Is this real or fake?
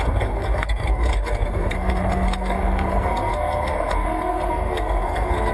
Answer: fake